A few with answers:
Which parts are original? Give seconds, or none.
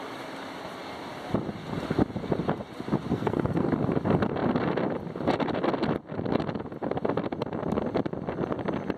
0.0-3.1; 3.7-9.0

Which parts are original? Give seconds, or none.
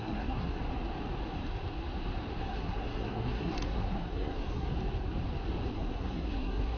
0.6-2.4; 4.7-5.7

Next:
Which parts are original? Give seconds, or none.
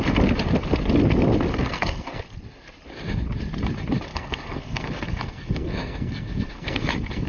0.0-1.5; 2.2-4.1